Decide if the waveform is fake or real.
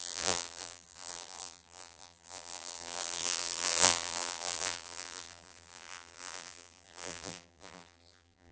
fake